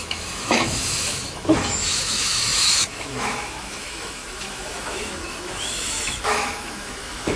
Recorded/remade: remade